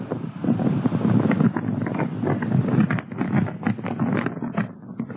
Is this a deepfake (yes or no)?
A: no